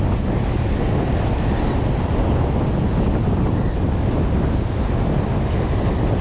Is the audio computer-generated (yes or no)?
no